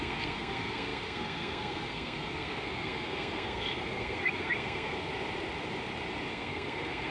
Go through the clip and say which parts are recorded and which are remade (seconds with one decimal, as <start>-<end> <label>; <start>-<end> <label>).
0.0-5.1 remade; 5.1-6.3 recorded; 6.3-7.1 remade